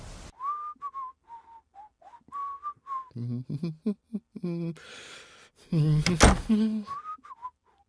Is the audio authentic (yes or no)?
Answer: yes